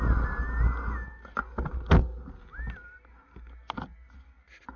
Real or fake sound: real